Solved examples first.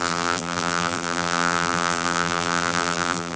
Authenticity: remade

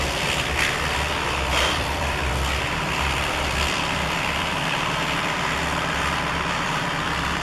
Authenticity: remade